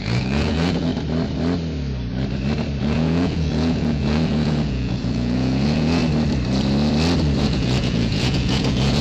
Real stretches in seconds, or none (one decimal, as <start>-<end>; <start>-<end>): 0.9-2.8; 6.0-7.4